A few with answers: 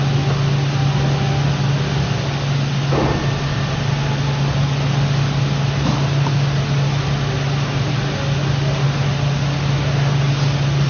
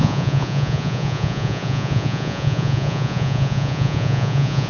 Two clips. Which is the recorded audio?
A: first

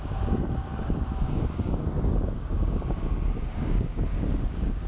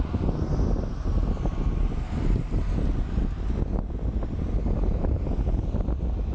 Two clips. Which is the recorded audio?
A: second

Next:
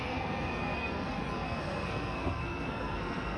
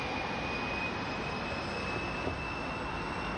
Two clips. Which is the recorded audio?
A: second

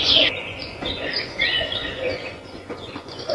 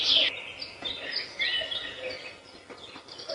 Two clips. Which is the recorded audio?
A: second